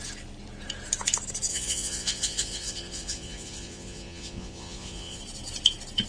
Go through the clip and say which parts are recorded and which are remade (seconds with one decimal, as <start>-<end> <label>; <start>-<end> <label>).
0.0-1.5 recorded; 1.5-5.2 remade; 5.2-6.1 recorded